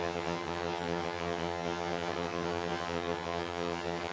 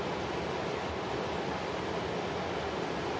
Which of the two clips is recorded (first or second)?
second